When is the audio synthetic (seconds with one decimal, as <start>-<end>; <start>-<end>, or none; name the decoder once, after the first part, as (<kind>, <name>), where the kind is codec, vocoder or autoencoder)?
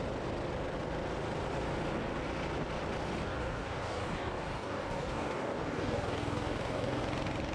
3.2-7.0 (codec, DAC)